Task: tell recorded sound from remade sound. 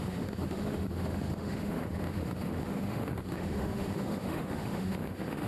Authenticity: remade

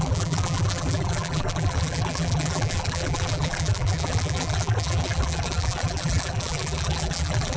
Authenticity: remade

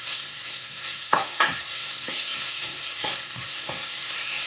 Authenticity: remade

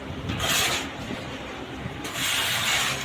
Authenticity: recorded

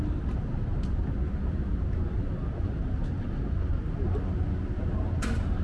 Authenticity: recorded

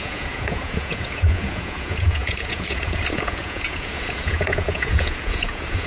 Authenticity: remade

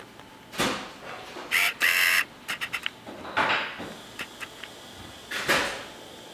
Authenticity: recorded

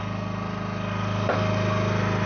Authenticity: recorded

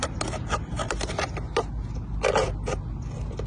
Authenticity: recorded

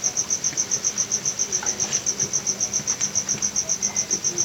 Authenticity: recorded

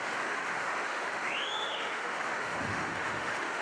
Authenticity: remade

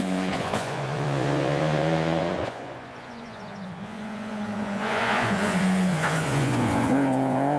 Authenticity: remade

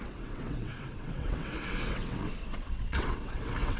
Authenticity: remade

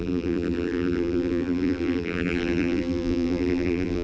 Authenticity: remade